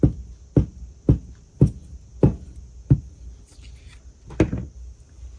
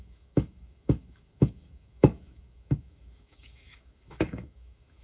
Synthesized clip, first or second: second